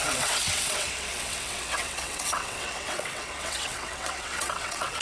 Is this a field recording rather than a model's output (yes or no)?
no